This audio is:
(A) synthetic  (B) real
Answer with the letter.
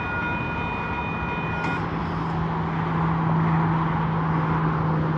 B